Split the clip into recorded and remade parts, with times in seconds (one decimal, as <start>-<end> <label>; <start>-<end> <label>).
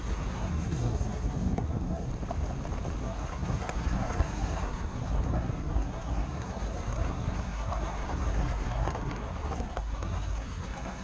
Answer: 0.0-2.1 remade; 2.1-3.0 recorded; 3.0-11.0 remade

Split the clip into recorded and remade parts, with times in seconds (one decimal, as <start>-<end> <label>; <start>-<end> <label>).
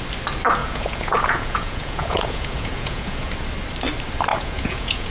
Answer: 0.0-0.6 recorded; 0.6-3.3 remade; 3.3-4.3 recorded; 4.3-5.1 remade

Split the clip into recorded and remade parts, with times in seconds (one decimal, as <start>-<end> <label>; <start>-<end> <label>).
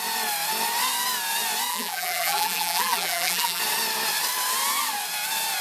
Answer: 0.0-1.7 recorded; 1.7-3.6 remade; 3.6-5.6 recorded